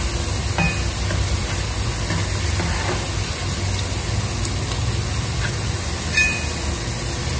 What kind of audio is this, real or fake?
real